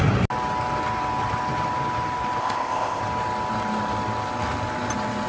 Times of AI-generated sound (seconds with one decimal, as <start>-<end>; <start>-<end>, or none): 2.4-3.0